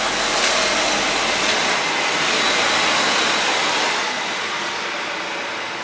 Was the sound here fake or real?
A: real